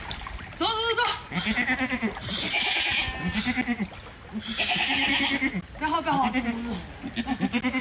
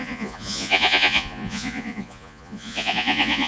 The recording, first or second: first